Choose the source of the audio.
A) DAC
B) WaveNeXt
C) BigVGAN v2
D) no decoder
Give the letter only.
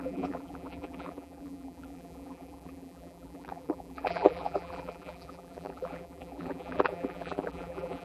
C